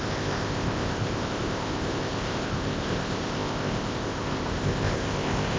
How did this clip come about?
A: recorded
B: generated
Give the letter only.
B